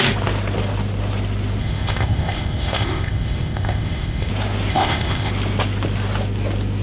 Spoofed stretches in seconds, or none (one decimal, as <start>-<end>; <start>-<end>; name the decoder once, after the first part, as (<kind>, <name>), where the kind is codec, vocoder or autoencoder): 1.6-4.3 (codec, ZipCodec); 4.7-5.3